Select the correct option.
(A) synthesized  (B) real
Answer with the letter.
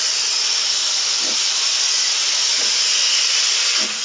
B